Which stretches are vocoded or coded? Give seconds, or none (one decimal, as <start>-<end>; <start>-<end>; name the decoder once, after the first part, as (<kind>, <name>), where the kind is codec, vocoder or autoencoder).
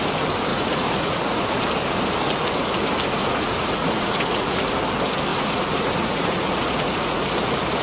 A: 0.5-1.6 (vocoder, Vocos); 3.2-4.7; 5.3-7.2